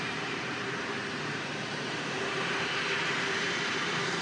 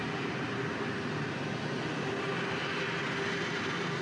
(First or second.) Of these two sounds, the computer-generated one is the first